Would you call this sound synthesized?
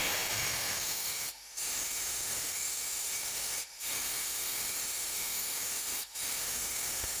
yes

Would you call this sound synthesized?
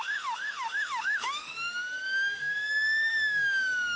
yes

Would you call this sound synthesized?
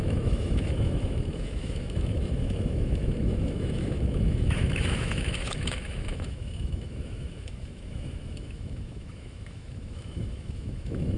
yes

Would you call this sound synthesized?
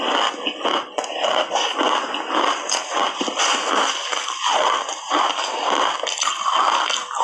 no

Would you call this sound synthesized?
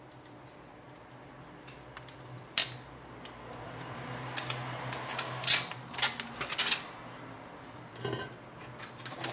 no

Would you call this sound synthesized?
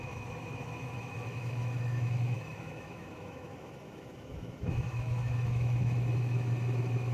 yes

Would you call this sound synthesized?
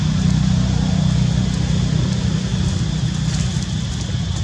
no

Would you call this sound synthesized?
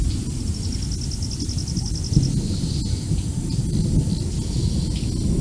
no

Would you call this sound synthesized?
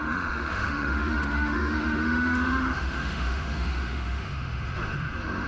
yes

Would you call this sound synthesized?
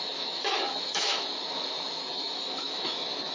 yes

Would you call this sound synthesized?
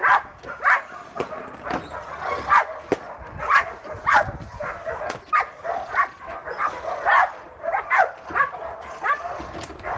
no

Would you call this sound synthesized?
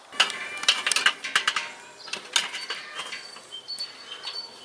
no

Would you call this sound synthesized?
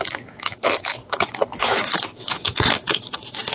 yes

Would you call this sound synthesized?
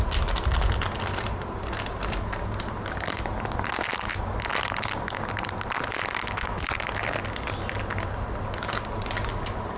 no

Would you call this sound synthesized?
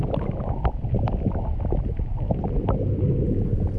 no